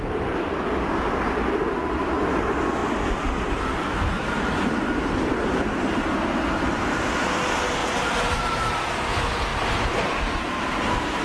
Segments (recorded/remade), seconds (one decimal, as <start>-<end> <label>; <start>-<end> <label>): 0.0-11.2 recorded